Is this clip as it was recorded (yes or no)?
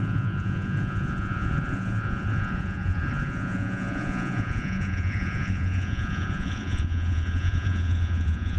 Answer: no